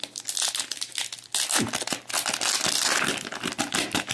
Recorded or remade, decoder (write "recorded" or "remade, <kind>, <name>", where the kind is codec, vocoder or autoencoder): recorded